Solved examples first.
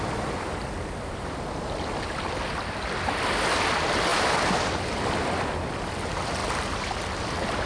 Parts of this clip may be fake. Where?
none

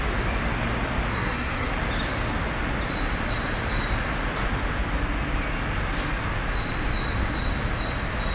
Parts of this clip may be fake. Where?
1.1-1.7 (codec, SNAC)

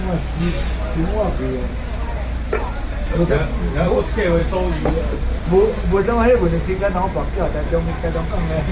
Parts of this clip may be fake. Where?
none

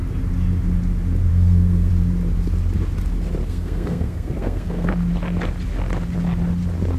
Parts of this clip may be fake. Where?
1.3-1.9 (codec, SNAC); 3.4-4.9

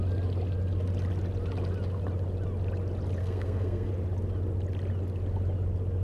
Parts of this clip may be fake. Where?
3.2-3.9 (codec, SNAC)

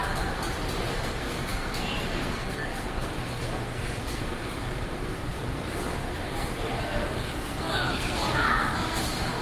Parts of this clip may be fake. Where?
0.0-0.4 (codec, SNAC); 0.9-9.4

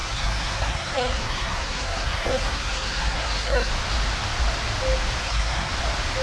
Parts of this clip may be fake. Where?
0.0-3.7 (codec, SNAC); 5.2-5.7

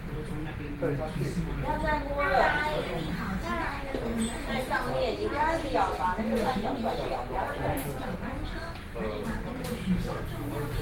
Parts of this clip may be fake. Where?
none